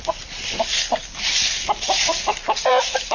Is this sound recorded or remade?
remade